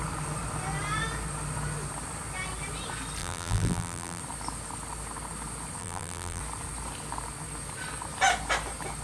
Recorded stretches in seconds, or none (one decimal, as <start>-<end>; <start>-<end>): 0.0-3.2; 4.2-5.8; 6.4-9.0